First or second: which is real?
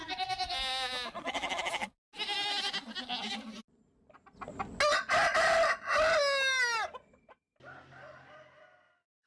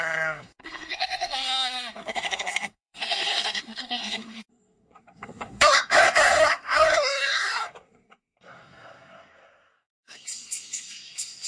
first